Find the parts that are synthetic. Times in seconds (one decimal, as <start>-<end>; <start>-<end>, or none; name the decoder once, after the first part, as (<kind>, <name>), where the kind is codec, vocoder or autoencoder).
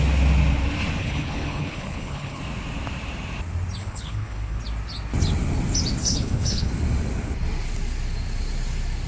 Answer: 1.0-2.4 (codec, HILCodec); 3.8-4.6; 6.0-6.7